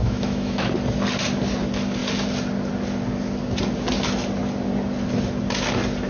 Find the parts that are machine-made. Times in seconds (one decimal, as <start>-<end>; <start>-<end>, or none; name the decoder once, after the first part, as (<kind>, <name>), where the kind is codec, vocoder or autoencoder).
0.0-0.7 (autoencoder, DAC-VAE)